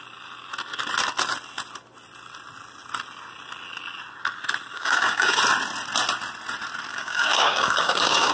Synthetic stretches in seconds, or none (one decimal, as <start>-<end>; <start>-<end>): 4.7-5.4; 6.9-8.3